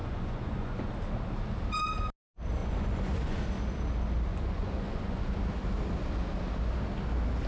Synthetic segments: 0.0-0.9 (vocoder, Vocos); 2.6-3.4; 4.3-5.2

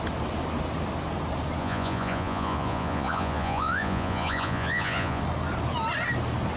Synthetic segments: 1.6-5.2 (vocoder, Vocos)

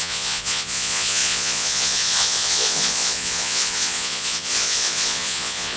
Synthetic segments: 0.0-5.8 (vocoder, Vocos)